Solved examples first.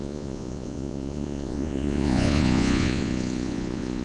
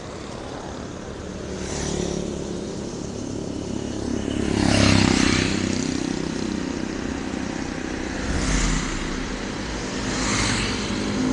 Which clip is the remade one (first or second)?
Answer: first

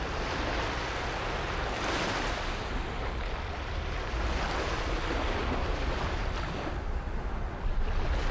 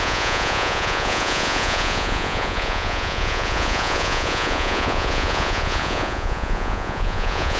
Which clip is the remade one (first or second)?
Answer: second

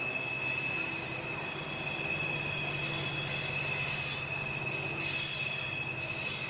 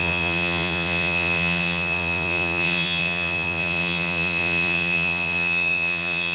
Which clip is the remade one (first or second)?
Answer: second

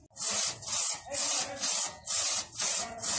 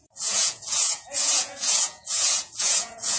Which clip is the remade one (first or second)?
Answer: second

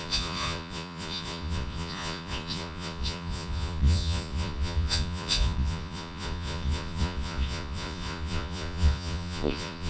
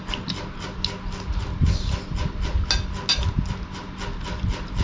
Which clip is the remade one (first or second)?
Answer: first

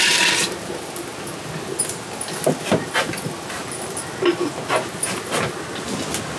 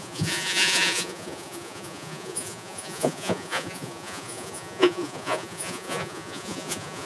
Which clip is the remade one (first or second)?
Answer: second